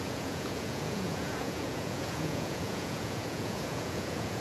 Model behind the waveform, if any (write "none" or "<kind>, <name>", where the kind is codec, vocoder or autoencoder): vocoder, Vocos